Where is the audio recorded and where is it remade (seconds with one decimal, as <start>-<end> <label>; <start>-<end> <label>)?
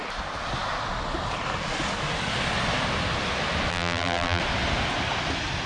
0.0-3.7 recorded; 3.7-4.4 remade; 4.4-5.7 recorded